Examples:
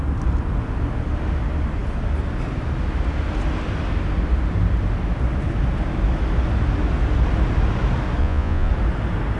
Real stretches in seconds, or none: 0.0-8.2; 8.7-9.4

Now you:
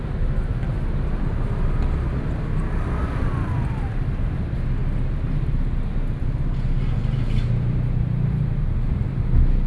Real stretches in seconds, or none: 0.0-9.7